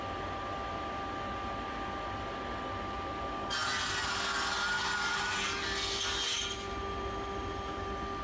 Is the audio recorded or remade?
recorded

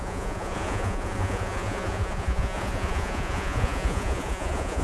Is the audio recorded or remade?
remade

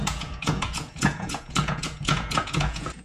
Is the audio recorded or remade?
remade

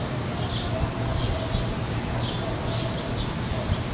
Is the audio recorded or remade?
recorded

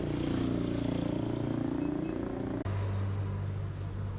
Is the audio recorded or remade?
recorded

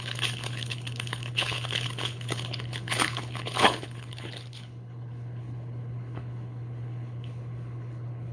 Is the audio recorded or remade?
remade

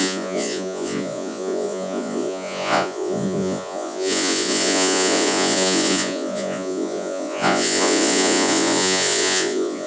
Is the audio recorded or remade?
remade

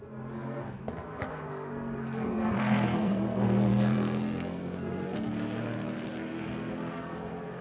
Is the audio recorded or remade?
remade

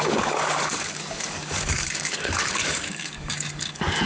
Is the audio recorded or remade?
remade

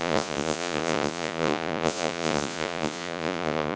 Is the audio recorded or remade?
remade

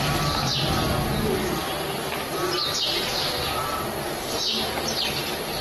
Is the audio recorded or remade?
recorded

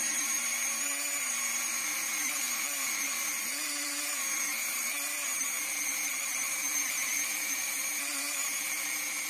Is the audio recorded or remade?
remade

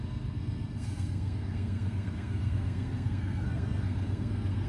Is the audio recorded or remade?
remade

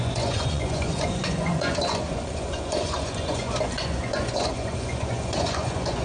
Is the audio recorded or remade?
remade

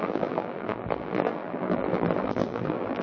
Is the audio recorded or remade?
remade